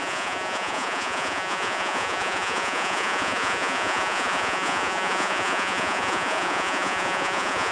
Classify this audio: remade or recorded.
remade